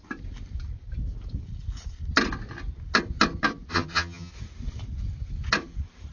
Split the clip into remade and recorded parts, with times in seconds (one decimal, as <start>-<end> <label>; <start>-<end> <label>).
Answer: 0.0-3.7 recorded; 3.7-4.3 remade; 4.3-6.1 recorded